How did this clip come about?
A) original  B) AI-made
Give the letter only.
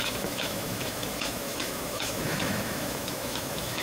B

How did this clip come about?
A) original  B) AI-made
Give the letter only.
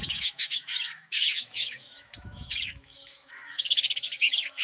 B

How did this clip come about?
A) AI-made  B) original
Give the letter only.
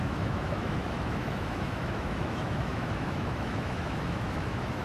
A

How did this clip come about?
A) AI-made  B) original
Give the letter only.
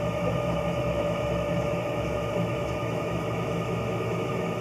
A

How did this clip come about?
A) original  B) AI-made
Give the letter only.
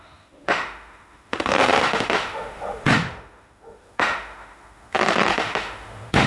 B